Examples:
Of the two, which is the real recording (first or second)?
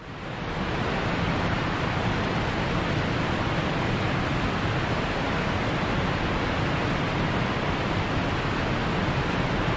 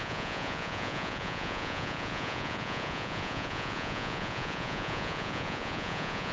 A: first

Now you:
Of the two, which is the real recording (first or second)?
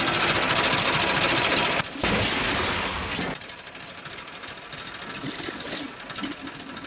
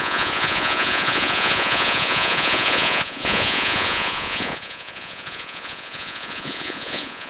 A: first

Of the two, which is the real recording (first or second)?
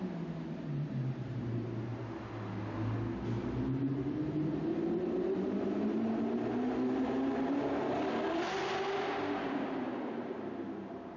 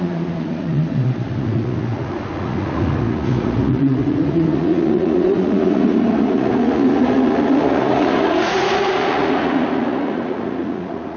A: first